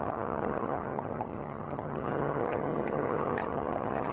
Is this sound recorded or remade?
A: remade